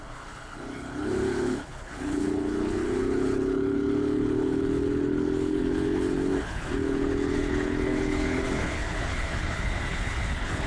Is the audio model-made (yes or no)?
yes